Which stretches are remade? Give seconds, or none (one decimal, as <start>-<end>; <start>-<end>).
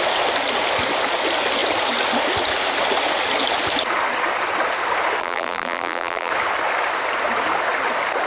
5.2-6.3